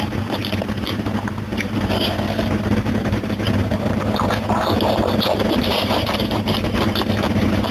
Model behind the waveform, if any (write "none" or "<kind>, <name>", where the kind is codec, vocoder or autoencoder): vocoder, BigVGAN v2